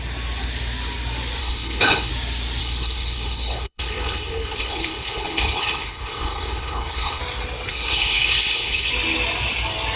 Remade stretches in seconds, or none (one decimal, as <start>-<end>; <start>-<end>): 1.4-2.1; 2.6-7.2; 7.7-8.9